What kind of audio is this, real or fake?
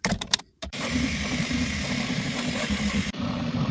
fake